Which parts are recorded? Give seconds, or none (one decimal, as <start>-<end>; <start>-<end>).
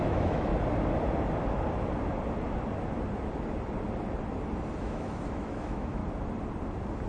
0.5-4.8; 6.0-7.1